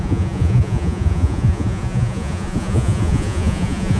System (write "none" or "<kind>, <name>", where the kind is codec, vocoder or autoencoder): vocoder, Vocos